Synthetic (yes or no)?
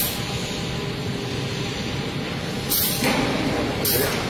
no